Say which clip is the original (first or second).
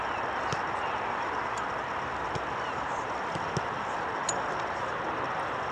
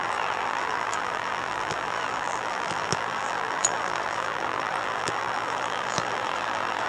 first